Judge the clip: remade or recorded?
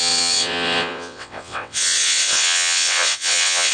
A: remade